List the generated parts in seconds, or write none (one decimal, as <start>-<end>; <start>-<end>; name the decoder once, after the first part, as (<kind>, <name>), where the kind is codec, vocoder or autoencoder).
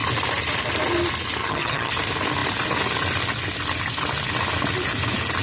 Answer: 1.4-1.9 (vocoder, HiFi-GAN)